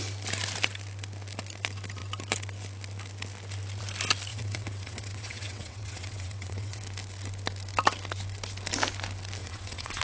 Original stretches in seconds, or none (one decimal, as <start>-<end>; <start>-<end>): 0.0-4.3; 6.8-9.4